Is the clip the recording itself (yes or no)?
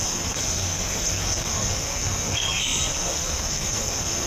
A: no